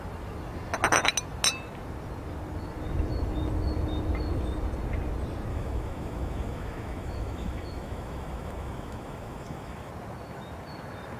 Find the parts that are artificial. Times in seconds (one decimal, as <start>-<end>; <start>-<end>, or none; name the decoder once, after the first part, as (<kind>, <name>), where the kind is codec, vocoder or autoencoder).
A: 5.5-9.9 (autoencoder, DAC-VAE)